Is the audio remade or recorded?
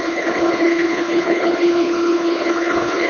remade